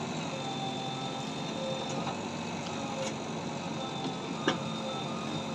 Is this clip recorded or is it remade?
recorded